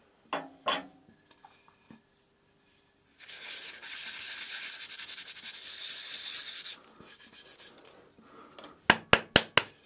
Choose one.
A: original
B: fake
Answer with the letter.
A